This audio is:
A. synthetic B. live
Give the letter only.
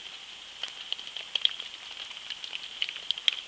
B